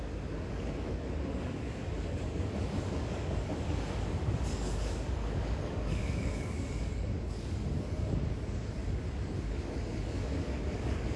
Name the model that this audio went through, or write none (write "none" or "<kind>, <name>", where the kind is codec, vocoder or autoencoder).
codec, DAC